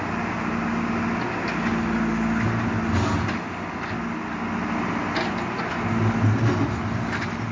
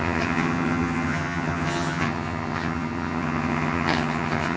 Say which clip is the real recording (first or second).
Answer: first